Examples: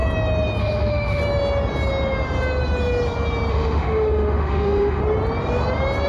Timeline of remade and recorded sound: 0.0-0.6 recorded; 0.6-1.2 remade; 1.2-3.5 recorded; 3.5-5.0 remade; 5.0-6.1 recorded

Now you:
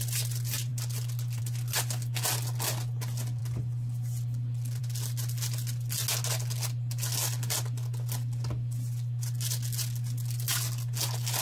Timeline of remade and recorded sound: 0.0-11.4 recorded

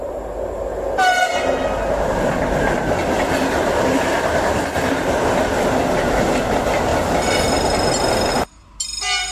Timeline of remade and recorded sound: 0.0-9.3 recorded

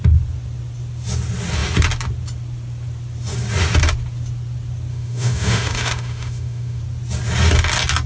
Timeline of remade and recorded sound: 0.0-4.9 recorded; 4.9-6.8 remade; 6.8-8.1 recorded